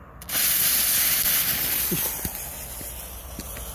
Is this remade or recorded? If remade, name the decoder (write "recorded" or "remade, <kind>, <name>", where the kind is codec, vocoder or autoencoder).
recorded